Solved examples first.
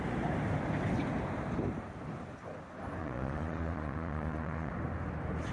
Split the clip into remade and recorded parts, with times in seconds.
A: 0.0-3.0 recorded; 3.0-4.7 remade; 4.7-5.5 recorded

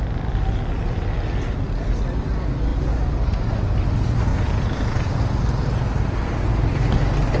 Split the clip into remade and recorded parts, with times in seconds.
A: 0.0-4.3 recorded; 4.3-5.2 remade; 5.2-7.4 recorded